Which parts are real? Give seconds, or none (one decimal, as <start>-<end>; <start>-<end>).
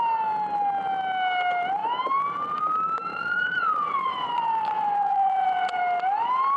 0.0-3.1; 5.8-6.6